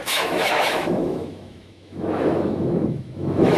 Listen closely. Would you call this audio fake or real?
fake